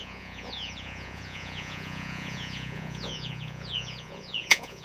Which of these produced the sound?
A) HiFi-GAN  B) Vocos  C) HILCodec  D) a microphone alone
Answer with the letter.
B